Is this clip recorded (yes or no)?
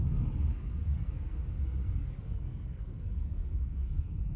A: no